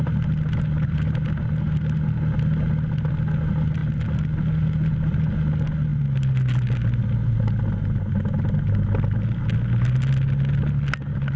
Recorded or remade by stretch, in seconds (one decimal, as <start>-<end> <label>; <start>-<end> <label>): 0.0-11.4 recorded